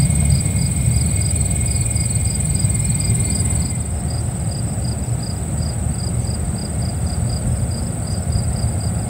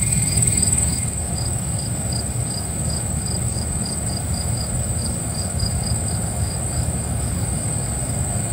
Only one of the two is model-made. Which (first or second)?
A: second